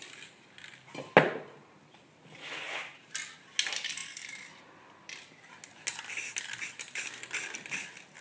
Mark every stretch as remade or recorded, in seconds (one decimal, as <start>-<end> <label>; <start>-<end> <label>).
0.0-8.2 recorded